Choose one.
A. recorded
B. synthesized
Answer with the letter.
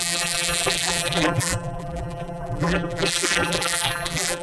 B